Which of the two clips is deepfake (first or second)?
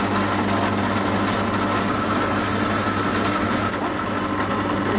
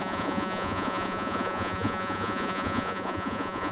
second